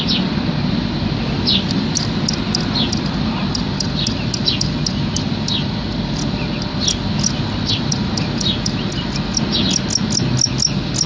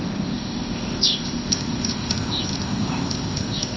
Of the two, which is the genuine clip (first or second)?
first